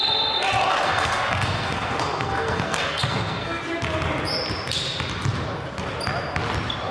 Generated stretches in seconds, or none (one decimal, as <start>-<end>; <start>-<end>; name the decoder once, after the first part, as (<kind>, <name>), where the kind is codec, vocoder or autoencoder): 0.7-3.6 (codec, SNAC)